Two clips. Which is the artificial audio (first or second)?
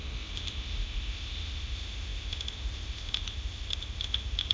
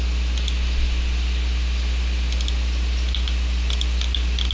first